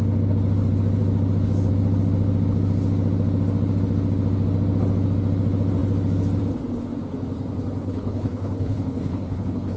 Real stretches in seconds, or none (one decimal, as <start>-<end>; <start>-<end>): 0.0-7.8